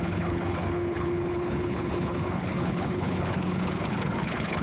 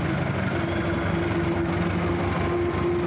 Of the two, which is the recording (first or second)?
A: second